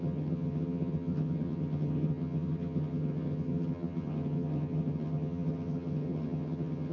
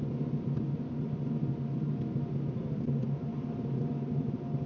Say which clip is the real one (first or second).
second